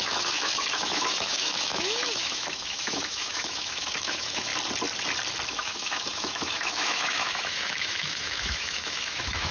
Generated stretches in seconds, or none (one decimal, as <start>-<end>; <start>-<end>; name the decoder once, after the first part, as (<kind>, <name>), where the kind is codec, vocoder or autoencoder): 0.0-4.5 (autoencoder, DAC-VAE); 5.5-9.5